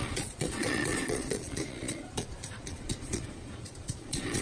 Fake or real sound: fake